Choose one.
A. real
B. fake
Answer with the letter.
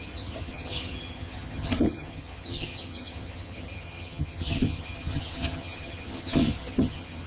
B